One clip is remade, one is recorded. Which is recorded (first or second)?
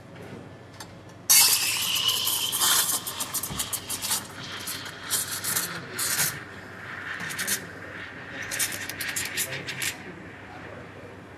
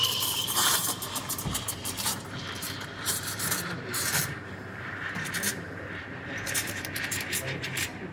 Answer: first